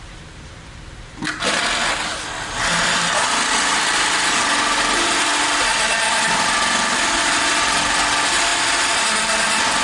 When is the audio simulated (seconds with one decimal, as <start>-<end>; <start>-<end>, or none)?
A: none